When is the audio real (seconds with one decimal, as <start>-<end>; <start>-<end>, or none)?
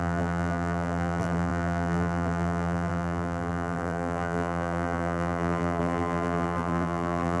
none